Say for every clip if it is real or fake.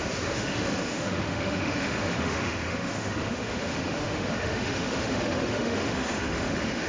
fake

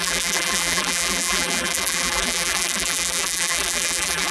fake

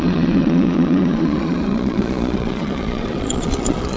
fake